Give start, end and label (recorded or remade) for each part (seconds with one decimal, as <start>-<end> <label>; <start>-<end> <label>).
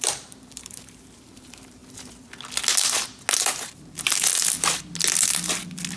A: 0.0-1.8 remade; 1.8-3.4 recorded; 3.4-4.3 remade; 4.3-6.0 recorded